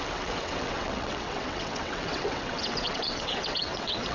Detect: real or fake fake